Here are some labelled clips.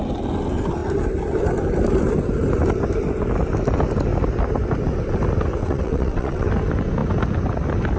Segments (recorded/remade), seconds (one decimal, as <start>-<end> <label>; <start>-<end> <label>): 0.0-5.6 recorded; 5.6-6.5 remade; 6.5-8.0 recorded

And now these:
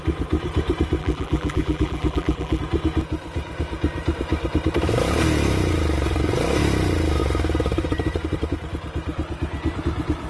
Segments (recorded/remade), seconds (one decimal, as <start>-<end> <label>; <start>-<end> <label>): 0.0-1.0 recorded; 1.0-2.6 remade; 2.6-10.3 recorded

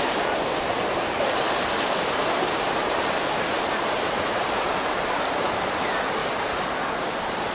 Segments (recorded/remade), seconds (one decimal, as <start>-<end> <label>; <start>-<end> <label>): 0.0-6.2 remade; 6.2-7.0 recorded; 7.0-7.5 remade